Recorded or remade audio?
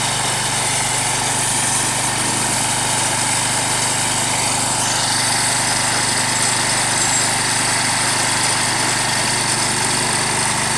recorded